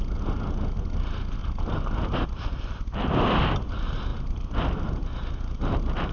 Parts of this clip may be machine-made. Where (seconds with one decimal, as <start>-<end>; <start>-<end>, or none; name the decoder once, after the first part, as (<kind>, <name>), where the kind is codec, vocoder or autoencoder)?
1.4-2.6 (vocoder, BigVGAN v2); 4.1-5.3